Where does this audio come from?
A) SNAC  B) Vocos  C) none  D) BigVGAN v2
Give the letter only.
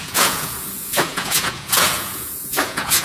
B